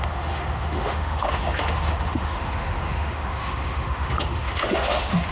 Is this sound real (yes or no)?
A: no